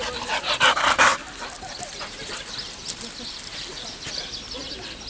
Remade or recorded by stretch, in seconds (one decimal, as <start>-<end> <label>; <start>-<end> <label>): 0.0-5.1 recorded